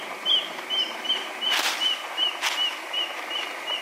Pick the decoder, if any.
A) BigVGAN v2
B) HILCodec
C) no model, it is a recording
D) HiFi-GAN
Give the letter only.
C